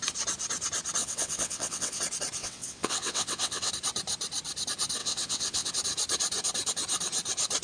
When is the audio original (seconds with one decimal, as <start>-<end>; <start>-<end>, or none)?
0.0-1.0; 2.0-2.4; 3.7-5.0; 5.7-7.6

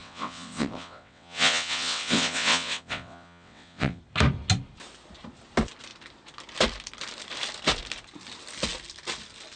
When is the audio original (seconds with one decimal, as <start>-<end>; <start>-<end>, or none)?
4.0-9.6